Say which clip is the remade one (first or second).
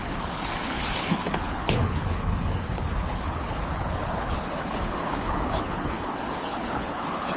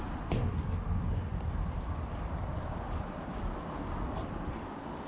first